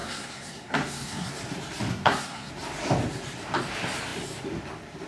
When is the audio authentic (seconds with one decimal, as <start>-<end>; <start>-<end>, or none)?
1.3-1.9; 2.5-5.1